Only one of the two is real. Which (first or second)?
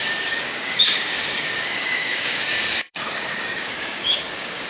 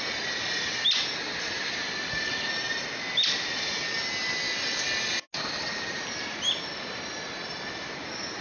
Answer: second